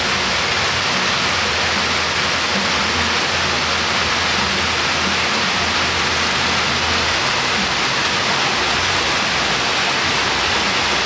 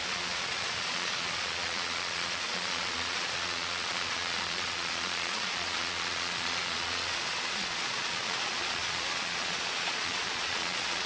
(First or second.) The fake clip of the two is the second